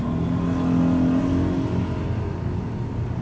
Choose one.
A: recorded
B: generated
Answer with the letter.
A